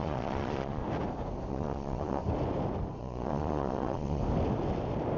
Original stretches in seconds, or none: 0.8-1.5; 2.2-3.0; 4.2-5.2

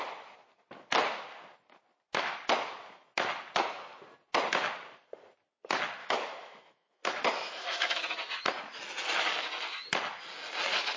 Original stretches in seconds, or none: 0.0-6.0; 8.0-11.0

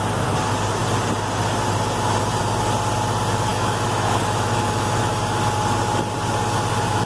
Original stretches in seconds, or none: 0.0-3.5; 5.1-7.1

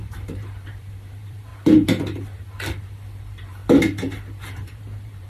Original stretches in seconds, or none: 1.5-3.2; 3.6-4.4

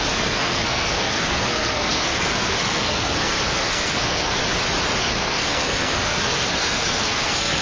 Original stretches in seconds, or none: 4.4-5.0

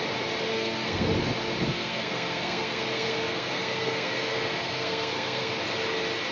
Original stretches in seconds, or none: 0.0-0.5; 1.1-1.7; 5.5-6.3

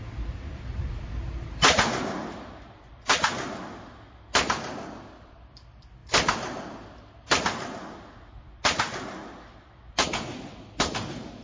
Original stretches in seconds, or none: 0.0-11.4

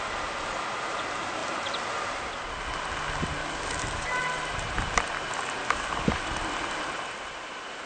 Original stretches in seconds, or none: 0.0-3.4; 4.2-5.6; 6.2-7.9